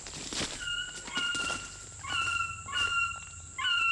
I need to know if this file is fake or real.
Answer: real